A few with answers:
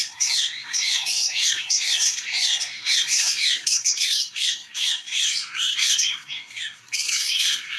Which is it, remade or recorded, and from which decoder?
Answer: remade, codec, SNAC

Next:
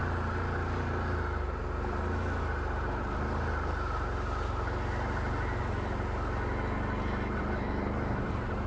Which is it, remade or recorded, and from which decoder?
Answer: recorded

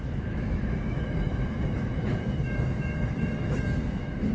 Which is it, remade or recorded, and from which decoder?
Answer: remade, autoencoder, DAC-VAE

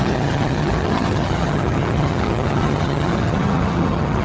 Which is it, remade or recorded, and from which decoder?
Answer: remade, vocoder, HiFi-GAN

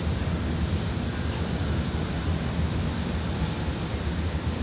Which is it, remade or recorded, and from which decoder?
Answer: recorded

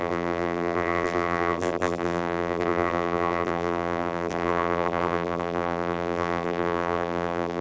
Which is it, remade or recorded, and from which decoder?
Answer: remade, vocoder, BigVGAN v2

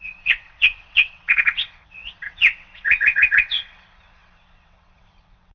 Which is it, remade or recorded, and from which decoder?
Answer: remade, vocoder, WaveNeXt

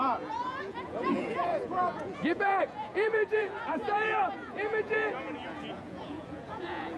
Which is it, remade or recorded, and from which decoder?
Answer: remade, vocoder, Vocos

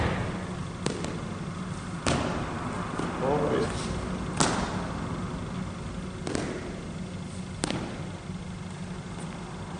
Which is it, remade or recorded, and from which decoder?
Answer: recorded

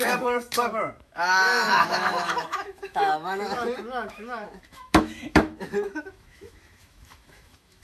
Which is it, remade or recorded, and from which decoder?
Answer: remade, autoencoder, DAC-VAE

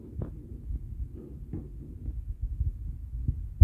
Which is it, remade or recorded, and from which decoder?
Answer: recorded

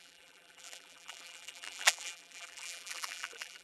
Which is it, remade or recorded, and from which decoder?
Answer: remade, vocoder, BigVGAN v2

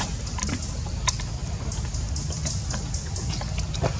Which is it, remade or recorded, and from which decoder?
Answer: recorded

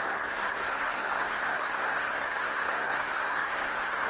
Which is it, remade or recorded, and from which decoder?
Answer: remade, codec, SNAC